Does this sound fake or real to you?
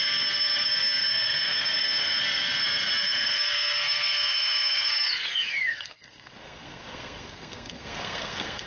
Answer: fake